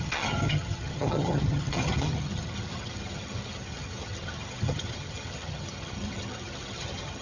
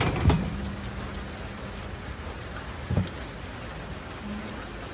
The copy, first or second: first